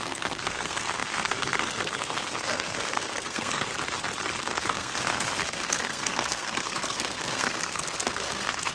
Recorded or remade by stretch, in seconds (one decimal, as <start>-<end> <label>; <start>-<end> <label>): 0.0-3.7 remade; 3.7-4.4 recorded; 4.4-8.7 remade